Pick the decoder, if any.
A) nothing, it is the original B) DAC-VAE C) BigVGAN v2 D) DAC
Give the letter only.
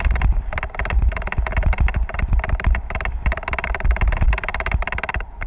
A